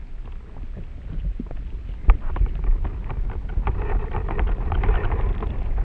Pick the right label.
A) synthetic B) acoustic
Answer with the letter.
B